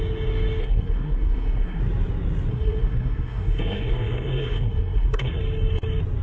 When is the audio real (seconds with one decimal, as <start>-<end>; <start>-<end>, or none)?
0.0-0.6; 1.8-2.5; 5.4-6.2